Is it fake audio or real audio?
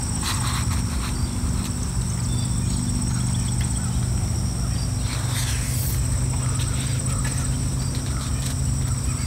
real